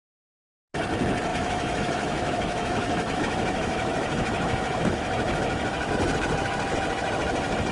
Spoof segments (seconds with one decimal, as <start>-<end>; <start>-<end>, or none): 1.3-5.9